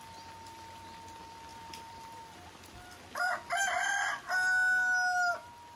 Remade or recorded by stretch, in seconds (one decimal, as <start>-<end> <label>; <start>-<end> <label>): 0.0-1.5 recorded; 1.5-3.3 remade; 3.3-5.8 recorded